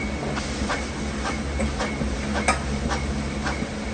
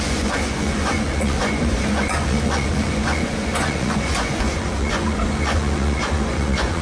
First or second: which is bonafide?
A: first